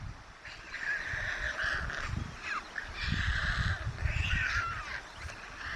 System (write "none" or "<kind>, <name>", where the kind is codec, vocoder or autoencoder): none